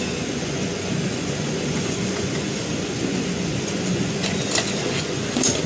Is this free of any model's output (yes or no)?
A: no